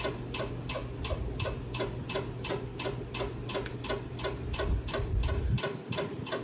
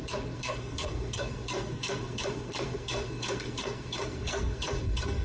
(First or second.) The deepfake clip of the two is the second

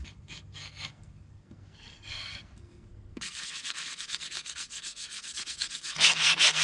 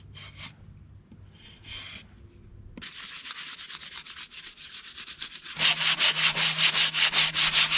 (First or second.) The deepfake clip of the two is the first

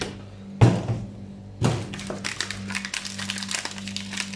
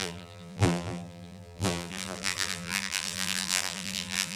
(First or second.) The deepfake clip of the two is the second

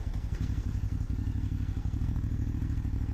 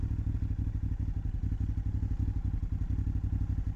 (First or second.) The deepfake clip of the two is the first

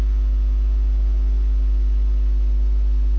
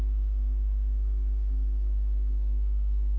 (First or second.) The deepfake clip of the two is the second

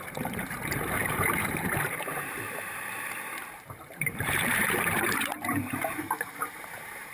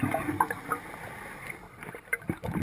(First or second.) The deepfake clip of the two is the first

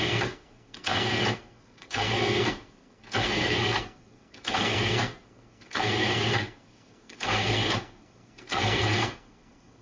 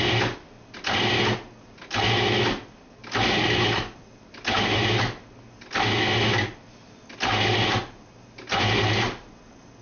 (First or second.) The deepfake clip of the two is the first